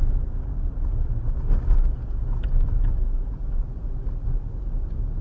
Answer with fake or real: real